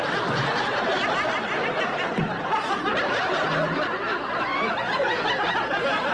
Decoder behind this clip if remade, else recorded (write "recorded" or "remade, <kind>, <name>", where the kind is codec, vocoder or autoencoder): recorded